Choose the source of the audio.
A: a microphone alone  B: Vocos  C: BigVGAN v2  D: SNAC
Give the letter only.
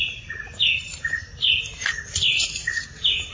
A